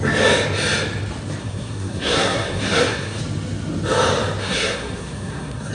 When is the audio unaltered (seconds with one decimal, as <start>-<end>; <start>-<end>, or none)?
0.0-1.4; 3.2-4.4